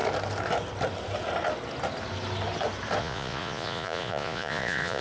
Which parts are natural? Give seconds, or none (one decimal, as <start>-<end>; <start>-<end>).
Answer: 0.0-3.0